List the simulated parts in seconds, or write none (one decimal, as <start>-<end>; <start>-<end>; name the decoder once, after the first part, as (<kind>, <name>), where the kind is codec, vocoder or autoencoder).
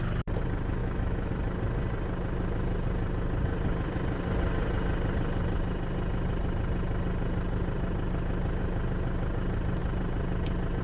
0.8-1.3 (autoencoder, DAC-VAE)